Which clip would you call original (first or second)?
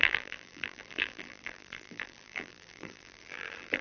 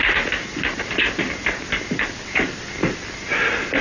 second